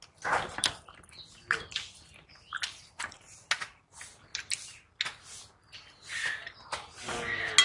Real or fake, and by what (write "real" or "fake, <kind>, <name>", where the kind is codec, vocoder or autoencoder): real